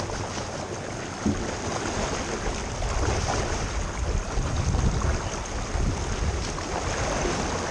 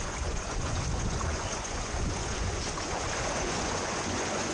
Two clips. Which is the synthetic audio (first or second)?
second